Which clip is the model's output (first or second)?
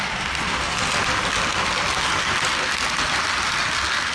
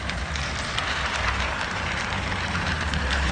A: second